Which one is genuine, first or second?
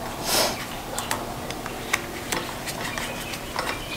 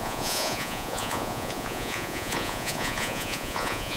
first